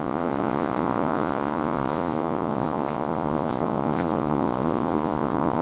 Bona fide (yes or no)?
no